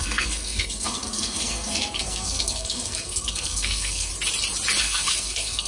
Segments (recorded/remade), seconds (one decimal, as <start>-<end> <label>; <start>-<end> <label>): 0.0-4.1 remade; 4.1-4.8 recorded; 4.8-5.7 remade